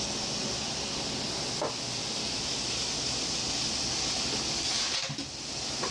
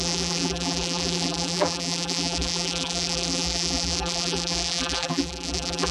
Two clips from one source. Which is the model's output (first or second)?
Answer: second